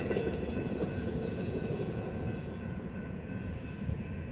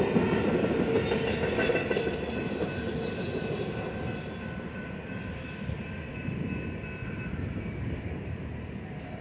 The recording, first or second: second